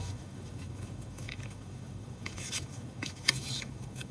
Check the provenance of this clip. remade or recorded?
remade